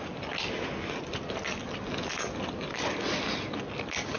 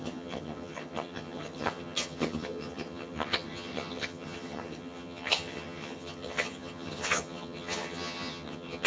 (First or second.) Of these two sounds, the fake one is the second